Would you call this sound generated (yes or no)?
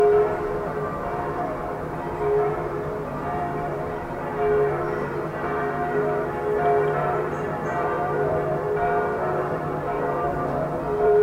yes